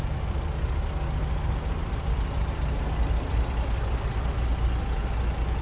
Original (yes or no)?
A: yes